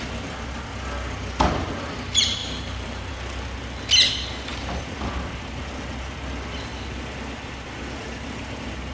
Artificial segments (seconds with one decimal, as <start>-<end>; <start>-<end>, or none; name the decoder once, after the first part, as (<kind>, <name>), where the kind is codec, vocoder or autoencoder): 2.4-3.1 (vocoder, BigVGAN v2)